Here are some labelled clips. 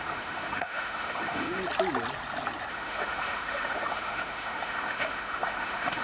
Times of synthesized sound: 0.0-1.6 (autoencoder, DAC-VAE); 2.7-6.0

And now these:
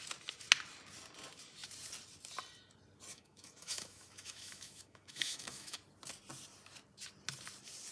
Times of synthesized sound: 3.1-5.8 (autoencoder, DAC-VAE)

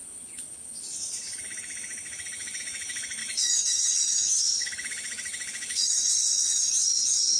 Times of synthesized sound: 0.0-7.4 (autoencoder, DAC-VAE)

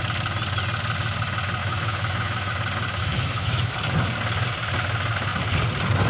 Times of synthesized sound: 1.6-2.5 (autoencoder, DAC-VAE); 3.0-3.7